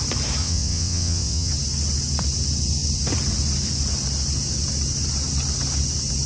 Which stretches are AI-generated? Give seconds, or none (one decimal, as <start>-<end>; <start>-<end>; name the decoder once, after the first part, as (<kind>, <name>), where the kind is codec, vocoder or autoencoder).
0.4-1.5 (vocoder, WaveNeXt)